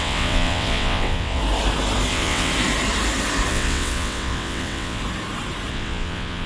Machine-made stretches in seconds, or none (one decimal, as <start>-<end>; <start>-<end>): 0.0-1.4; 2.1-2.5; 3.5-5.0; 5.7-6.5